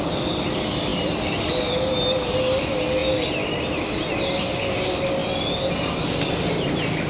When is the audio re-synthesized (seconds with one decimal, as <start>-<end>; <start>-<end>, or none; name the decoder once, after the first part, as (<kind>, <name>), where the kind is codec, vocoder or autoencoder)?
none